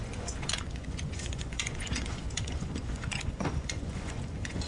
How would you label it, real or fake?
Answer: fake